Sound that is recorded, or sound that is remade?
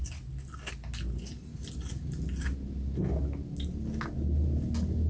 recorded